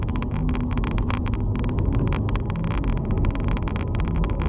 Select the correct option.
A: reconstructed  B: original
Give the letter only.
B